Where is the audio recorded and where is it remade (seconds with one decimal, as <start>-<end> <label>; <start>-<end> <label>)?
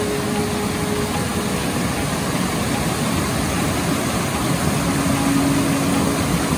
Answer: 0.0-6.6 recorded